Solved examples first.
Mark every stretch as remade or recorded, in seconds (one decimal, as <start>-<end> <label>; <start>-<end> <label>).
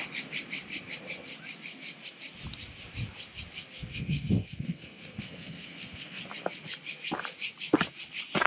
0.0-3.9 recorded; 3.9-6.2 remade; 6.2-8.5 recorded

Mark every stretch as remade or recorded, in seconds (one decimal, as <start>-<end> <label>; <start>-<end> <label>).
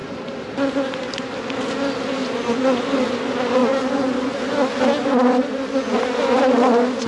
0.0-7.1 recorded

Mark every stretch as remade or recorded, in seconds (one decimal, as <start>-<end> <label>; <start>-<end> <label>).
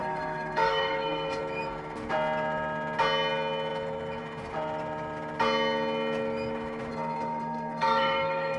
0.0-1.4 remade; 1.4-6.9 recorded; 6.9-8.6 remade